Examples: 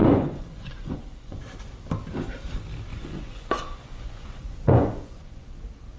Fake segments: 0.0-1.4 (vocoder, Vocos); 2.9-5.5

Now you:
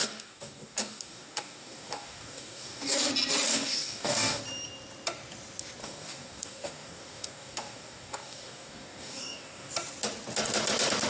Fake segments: 0.0-3.1 (codec, DAC); 3.5-4.4; 5.8-9.7

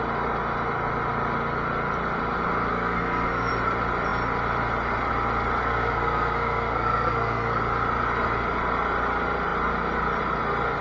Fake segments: 2.7-3.5 (codec, SNAC); 5.6-7.6

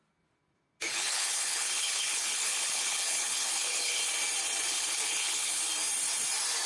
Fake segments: 0.9-4.0 (codec, HILCodec); 4.7-5.6

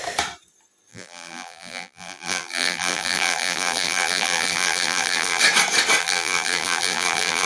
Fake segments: 0.9-5.4 (vocoder, BigVGAN v2); 6.0-7.5

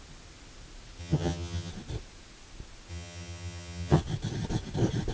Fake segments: 1.0-1.7 (vocoder, HiFi-GAN); 2.9-4.0